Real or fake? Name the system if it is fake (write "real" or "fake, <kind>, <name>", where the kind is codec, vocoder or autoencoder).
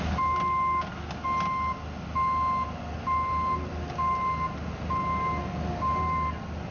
real